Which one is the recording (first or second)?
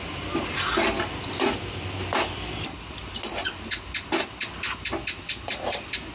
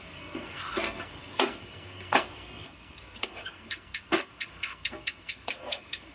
first